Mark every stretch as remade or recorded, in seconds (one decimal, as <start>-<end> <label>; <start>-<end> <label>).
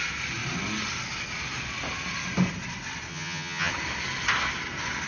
0.0-3.1 recorded; 3.1-3.7 remade; 3.7-5.1 recorded